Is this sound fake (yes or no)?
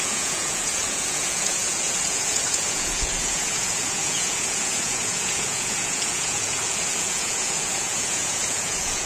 yes